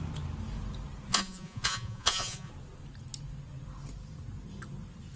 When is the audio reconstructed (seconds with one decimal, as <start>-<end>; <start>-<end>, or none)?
1.1-2.5